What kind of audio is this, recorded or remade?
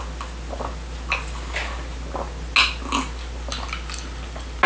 recorded